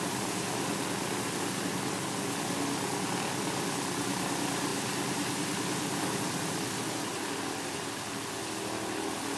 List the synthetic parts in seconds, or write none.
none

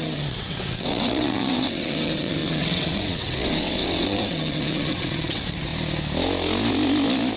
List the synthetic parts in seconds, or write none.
0.0-5.7 (vocoder, WaveNeXt)

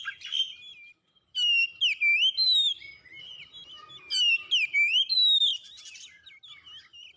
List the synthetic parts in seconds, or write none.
none

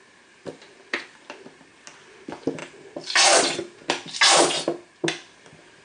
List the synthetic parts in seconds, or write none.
none

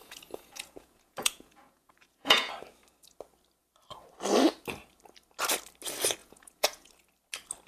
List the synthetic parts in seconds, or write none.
0.0-2.5 (vocoder, Vocos); 6.2-6.9

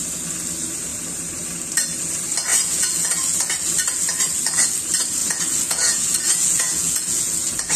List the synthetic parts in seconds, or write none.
2.5-3.5 (vocoder, Vocos); 5.2-7.8

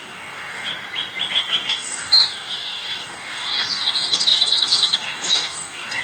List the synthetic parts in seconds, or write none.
0.0-0.7 (codec, DAC); 1.3-6.0